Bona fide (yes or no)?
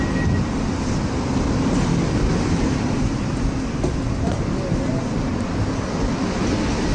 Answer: yes